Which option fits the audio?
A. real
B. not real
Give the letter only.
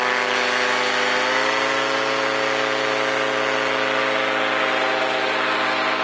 A